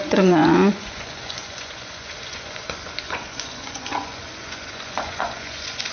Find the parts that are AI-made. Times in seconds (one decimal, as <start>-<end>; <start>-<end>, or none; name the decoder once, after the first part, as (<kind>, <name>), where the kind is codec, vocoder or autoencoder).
0.0-5.9 (vocoder, Vocos)